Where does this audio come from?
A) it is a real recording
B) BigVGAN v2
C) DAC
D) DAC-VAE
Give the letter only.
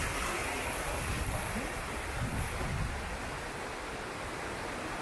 A